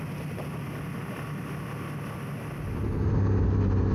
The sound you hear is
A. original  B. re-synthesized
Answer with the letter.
A